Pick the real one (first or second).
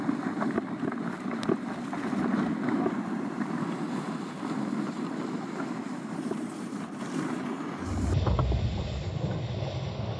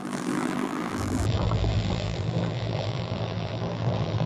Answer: first